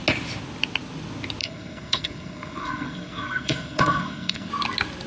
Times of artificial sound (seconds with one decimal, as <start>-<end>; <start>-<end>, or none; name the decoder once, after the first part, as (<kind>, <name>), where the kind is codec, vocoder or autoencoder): 1.4-4.5 (codec, SNAC)